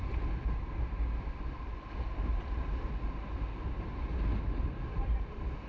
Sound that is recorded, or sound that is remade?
recorded